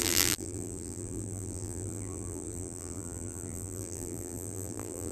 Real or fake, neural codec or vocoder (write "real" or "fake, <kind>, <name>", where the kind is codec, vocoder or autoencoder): fake, vocoder, BigVGAN v2